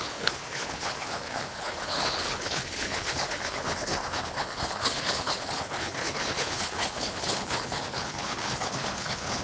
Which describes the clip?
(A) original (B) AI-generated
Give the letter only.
B